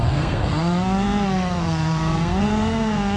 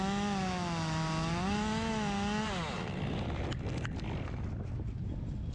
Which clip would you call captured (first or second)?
second